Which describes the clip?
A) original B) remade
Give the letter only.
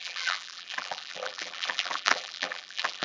B